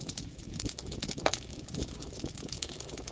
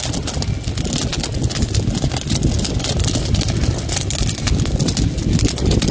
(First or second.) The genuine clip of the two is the second